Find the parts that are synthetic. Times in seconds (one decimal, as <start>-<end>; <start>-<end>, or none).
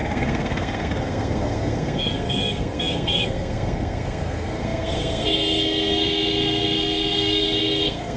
0.0-8.2